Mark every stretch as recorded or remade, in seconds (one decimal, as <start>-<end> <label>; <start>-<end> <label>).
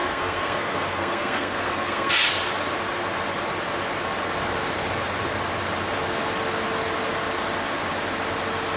0.0-2.1 remade; 2.1-8.8 recorded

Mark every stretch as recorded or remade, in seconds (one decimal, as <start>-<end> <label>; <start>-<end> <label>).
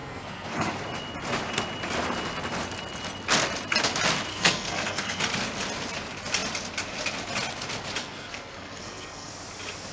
0.0-0.7 remade; 0.7-4.3 recorded; 4.3-5.2 remade; 5.2-8.0 recorded; 8.0-9.3 remade; 9.3-9.9 recorded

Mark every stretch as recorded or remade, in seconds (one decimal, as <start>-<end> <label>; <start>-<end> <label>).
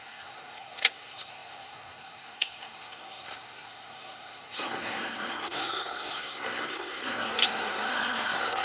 0.0-8.6 remade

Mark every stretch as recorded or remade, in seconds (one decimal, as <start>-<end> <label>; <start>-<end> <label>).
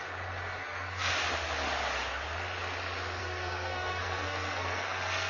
0.0-0.6 recorded; 0.6-1.1 remade; 1.1-3.2 recorded; 3.2-5.3 remade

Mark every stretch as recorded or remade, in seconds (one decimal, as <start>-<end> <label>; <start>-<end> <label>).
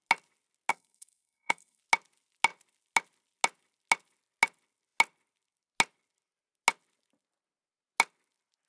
0.0-0.7 recorded; 0.7-1.8 remade; 1.8-8.7 recorded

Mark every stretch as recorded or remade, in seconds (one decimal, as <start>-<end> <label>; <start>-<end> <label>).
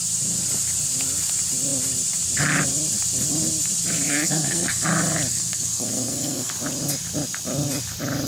0.0-4.1 recorded; 4.1-4.8 remade; 4.8-5.3 recorded; 5.3-6.5 remade; 6.5-8.3 recorded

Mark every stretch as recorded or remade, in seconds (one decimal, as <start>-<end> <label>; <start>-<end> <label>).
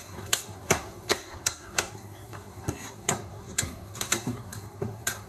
0.0-5.3 remade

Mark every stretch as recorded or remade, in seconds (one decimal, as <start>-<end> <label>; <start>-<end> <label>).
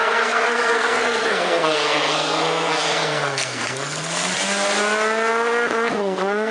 0.0-4.3 remade; 4.3-5.9 recorded; 5.9-6.5 remade